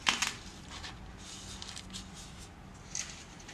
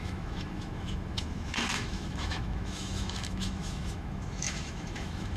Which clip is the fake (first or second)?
second